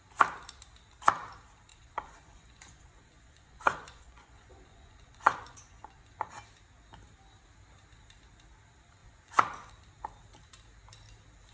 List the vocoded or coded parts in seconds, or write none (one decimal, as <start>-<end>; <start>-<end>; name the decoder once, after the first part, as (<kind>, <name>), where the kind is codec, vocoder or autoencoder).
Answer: 1.7-6.3 (vocoder, Vocos); 9.0-9.7